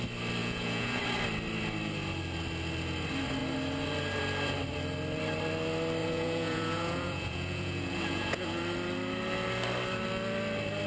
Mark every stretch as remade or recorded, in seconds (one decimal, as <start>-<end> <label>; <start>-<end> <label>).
0.0-0.4 recorded; 0.4-1.0 remade; 1.0-6.0 recorded; 6.0-8.6 remade; 8.6-10.9 recorded